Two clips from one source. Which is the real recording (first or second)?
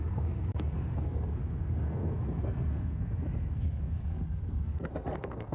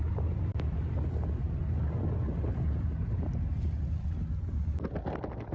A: second